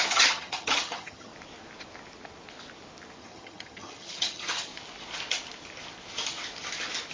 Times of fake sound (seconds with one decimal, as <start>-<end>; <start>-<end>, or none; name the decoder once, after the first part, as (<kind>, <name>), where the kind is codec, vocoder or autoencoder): 0.0-1.3 (vocoder, HiFi-GAN); 3.2-4.7